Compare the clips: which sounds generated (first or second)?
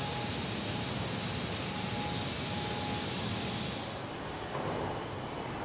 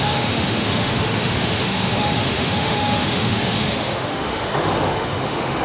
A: second